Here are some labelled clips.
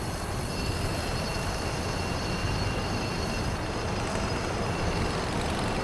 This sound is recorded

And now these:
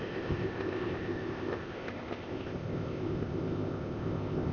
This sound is remade